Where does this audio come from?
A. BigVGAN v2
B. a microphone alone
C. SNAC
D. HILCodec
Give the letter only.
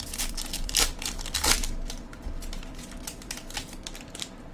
A